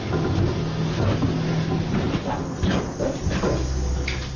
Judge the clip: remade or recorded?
recorded